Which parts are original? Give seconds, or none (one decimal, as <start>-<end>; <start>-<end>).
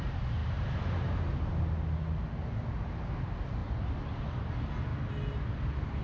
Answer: 0.0-6.0